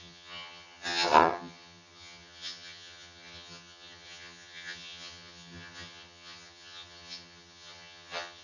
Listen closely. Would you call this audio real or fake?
fake